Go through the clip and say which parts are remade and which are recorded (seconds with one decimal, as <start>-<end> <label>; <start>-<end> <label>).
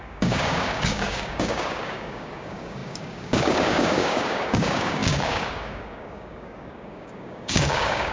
0.0-8.1 remade